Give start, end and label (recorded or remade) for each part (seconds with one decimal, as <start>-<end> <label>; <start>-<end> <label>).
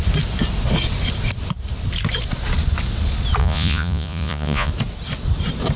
0.0-3.4 recorded; 3.4-4.7 remade; 4.7-5.8 recorded